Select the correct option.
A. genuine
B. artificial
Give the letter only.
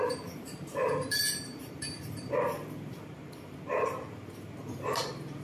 B